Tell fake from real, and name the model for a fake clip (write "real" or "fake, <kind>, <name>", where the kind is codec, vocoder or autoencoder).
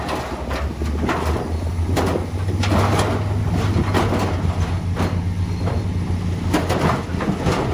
real